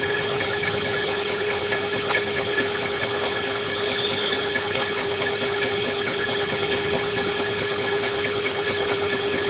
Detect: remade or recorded remade